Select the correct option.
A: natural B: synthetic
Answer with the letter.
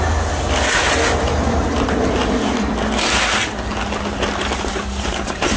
A